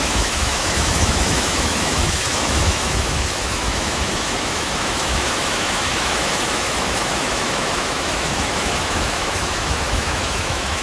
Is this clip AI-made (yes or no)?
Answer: yes